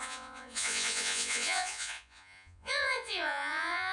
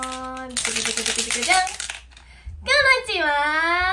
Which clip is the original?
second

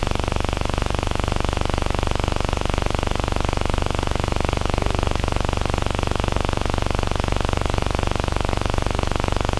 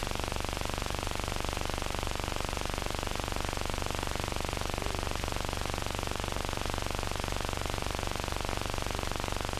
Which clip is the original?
second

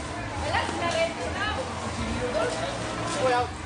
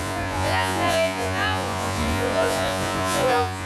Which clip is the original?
first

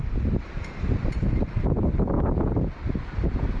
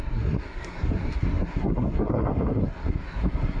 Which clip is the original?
first